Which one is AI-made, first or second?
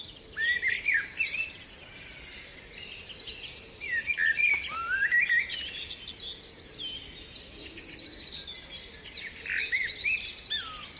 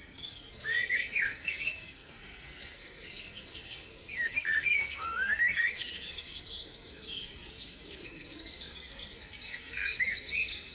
second